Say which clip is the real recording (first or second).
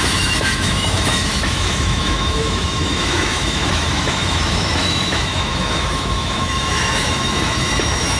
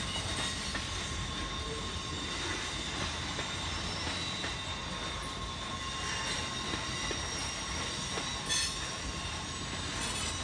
second